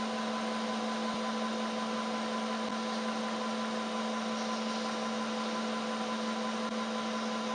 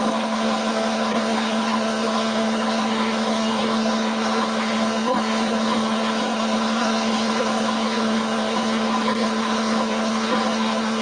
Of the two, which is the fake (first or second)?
second